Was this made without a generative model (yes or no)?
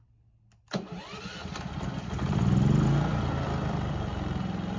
yes